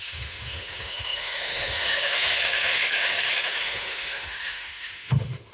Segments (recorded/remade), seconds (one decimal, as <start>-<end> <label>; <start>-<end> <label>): 0.0-5.5 remade